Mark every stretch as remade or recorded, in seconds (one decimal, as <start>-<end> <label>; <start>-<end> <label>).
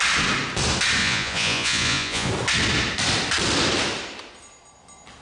0.0-1.0 recorded; 1.0-2.3 remade; 2.3-5.2 recorded